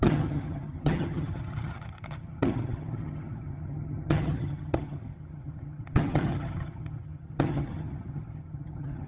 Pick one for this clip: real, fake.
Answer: fake